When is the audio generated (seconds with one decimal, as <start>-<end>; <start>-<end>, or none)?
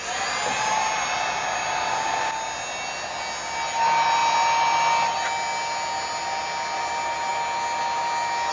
none